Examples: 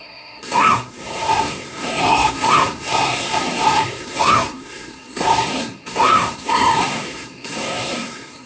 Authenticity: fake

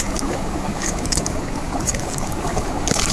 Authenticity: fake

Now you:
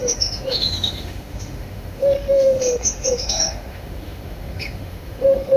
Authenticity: fake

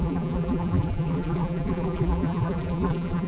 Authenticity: fake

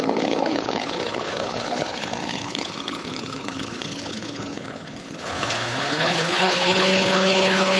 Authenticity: fake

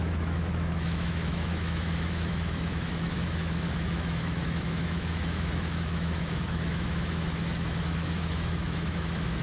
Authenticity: fake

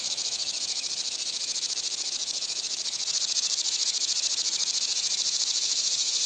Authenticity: fake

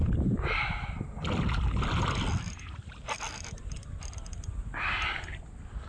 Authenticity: real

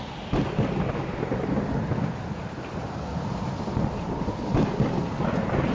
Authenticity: real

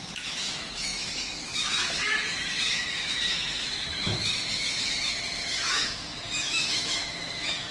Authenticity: fake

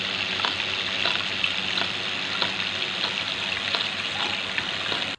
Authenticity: real